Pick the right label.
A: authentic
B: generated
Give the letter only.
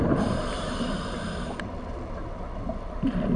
B